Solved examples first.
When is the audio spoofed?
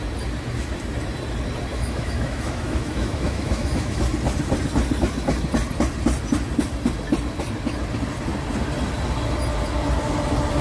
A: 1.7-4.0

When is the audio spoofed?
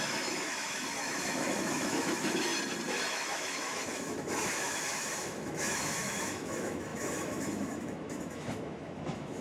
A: 0.0-2.5; 3.1-9.4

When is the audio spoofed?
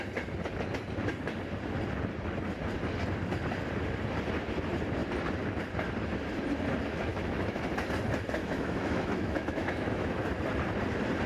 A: 7.1-7.6; 8.4-10.2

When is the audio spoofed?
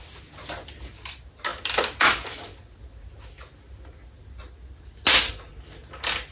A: none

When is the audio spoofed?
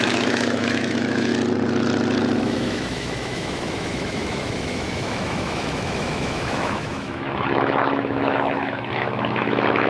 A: 0.0-1.3; 2.4-9.9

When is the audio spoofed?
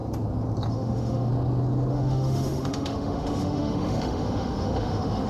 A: 0.7-1.3; 1.9-5.3